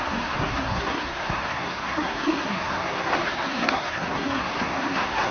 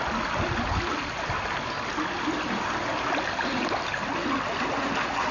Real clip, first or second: second